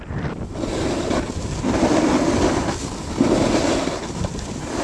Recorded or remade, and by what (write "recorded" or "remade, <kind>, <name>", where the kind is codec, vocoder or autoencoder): recorded